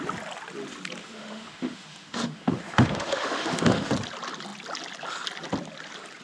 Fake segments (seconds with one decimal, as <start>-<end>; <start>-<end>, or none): 1.0-3.9